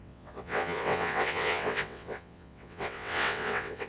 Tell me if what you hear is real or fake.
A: fake